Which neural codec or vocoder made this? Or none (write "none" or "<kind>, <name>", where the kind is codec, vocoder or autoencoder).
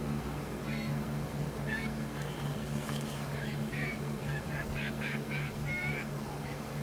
codec, SNAC